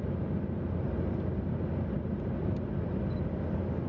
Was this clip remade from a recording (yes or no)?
no